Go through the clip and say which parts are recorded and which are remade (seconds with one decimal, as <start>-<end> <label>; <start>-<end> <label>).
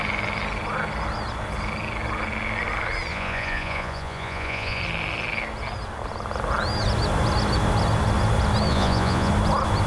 0.0-3.1 recorded; 3.1-4.8 remade; 4.8-8.7 recorded; 8.7-9.3 remade; 9.3-9.9 recorded